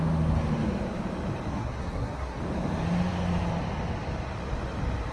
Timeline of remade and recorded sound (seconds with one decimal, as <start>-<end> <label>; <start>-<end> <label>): 0.0-1.5 recorded; 1.5-2.4 remade; 2.4-5.1 recorded